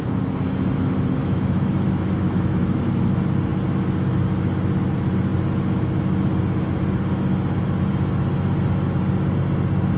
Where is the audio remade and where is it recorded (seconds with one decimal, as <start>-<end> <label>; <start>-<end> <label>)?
0.0-1.2 recorded; 1.2-2.8 remade; 2.8-10.0 recorded